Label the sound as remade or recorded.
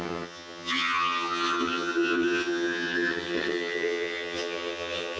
remade